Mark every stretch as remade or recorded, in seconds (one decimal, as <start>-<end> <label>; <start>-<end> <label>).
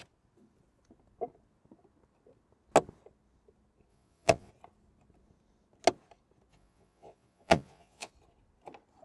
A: 0.0-3.9 recorded; 3.9-4.5 remade; 4.5-6.5 recorded; 6.5-8.1 remade; 8.1-9.0 recorded